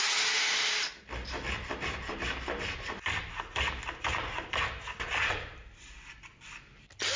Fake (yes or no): no